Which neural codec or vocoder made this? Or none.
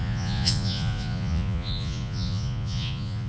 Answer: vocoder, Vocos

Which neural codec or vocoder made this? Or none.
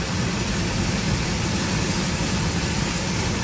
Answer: none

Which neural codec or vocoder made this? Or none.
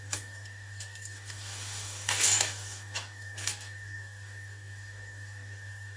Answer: codec, DAC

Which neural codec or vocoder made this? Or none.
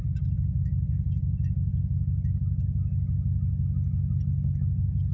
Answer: none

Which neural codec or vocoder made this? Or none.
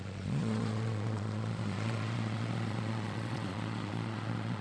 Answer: vocoder, Vocos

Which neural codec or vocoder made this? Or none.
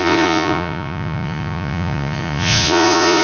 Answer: vocoder, Vocos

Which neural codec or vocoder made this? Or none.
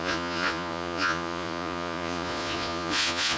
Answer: vocoder, Vocos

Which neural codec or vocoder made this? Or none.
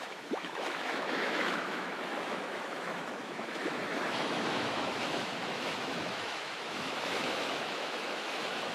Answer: autoencoder, DAC-VAE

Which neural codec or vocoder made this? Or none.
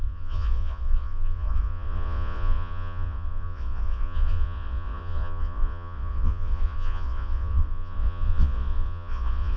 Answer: vocoder, Vocos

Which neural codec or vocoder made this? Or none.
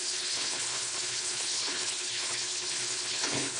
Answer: codec, HILCodec